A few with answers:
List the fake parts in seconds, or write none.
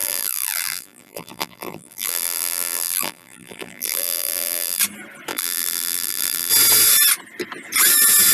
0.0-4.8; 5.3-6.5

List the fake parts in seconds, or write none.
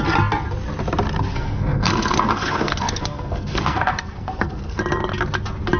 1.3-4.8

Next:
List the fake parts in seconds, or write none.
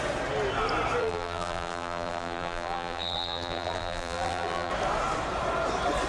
1.0-4.7